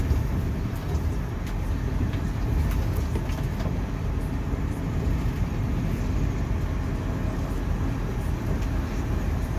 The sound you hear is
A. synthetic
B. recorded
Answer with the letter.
B